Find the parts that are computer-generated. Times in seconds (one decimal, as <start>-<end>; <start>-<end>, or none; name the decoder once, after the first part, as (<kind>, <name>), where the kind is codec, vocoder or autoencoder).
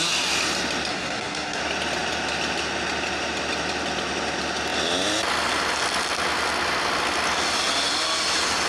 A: 0.9-1.6 (codec, SNAC)